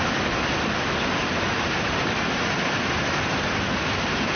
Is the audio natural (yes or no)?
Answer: yes